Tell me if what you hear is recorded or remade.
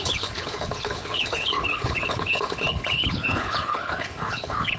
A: remade